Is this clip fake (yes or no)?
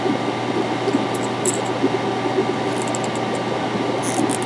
no